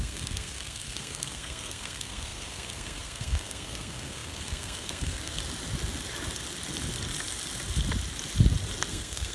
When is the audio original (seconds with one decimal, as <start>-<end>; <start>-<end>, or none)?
5.4-8.9